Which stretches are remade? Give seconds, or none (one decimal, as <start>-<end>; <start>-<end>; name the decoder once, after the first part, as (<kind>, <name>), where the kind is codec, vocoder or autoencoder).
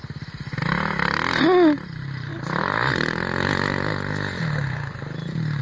none